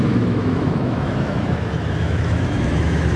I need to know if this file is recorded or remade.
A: remade